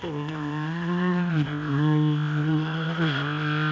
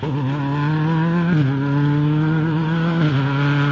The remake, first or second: first